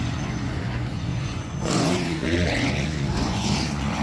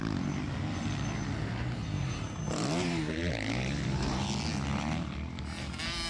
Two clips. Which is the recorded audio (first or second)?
second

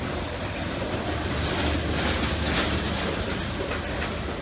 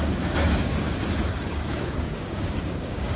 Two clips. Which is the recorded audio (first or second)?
first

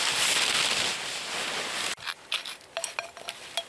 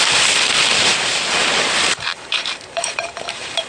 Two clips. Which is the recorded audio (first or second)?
first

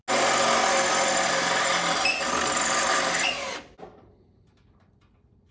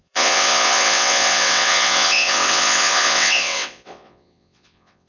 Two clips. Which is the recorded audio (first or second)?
first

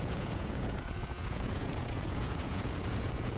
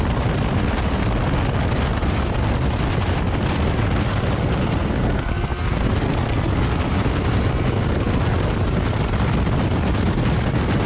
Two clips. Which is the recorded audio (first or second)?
second